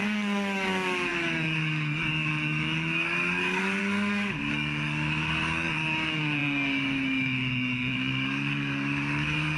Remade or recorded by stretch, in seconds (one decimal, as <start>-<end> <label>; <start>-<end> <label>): 0.0-9.6 remade

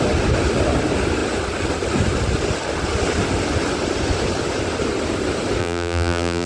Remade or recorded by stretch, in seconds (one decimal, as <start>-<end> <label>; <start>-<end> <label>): 0.0-5.6 recorded; 5.6-6.5 remade

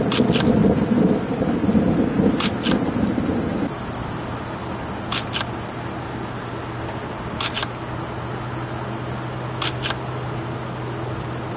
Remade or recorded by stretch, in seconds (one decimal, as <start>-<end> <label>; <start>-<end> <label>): 0.0-11.6 recorded

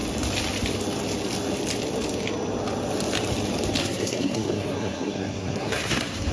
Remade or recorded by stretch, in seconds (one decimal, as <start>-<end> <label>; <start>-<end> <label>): 0.0-3.8 recorded; 3.8-6.3 remade

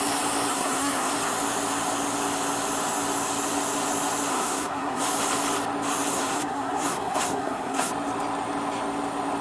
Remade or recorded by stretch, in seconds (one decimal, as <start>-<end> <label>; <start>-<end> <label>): 0.0-0.5 recorded; 0.5-1.1 remade; 1.1-4.3 recorded; 4.3-5.0 remade; 5.0-6.1 recorded; 6.1-7.9 remade; 7.9-9.4 recorded